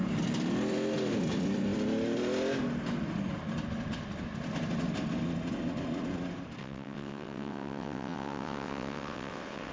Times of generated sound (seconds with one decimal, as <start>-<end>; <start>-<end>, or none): 6.6-9.7